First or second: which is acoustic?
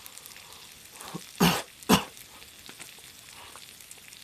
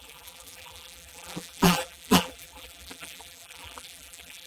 first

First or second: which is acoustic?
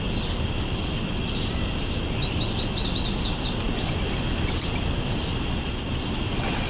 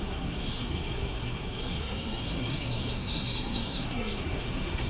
first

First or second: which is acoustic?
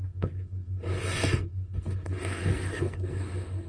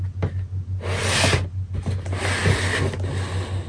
second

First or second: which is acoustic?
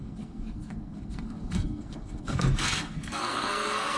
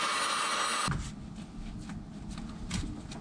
second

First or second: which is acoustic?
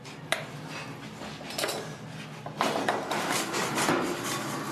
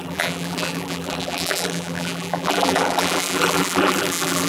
first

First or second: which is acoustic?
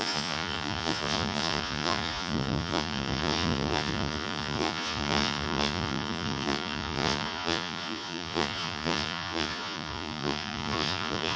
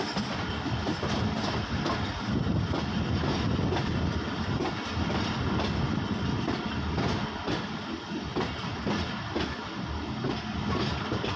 second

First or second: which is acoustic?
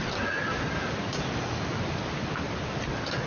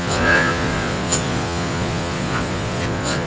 first